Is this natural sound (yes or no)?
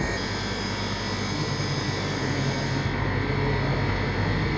yes